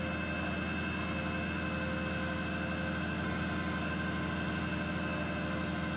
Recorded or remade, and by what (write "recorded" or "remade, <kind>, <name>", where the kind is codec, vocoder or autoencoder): recorded